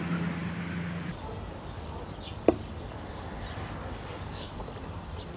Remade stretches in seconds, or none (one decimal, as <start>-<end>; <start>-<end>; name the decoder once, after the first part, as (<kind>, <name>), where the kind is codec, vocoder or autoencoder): 3.8-4.6 (codec, DAC)